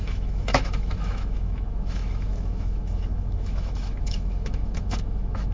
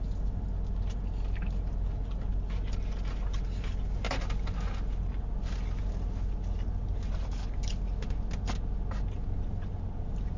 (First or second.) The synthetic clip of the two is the first